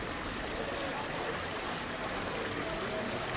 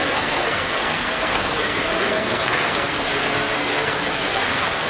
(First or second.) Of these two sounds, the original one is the first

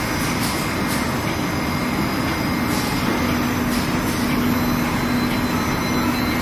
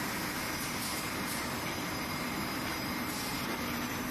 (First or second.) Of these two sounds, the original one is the first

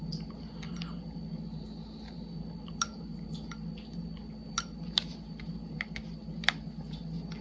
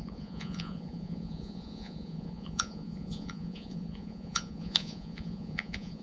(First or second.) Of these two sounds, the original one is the first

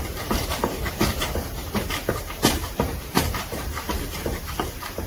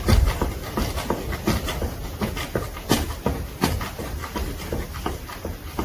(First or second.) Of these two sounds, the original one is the second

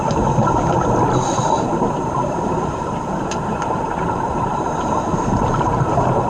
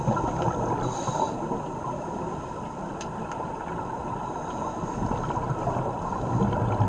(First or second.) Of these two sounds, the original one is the second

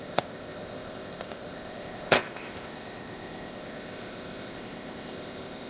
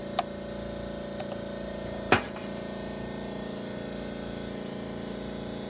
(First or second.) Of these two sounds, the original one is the second